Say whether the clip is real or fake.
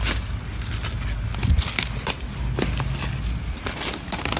real